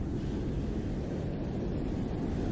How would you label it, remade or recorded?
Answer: recorded